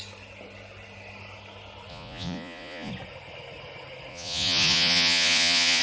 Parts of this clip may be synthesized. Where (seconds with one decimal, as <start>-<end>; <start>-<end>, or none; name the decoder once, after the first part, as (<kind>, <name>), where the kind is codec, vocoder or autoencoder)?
1.9-2.9 (vocoder, Vocos); 4.1-5.8